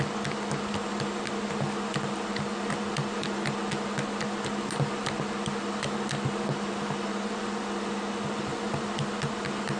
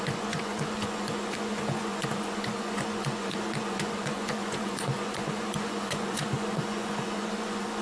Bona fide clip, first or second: first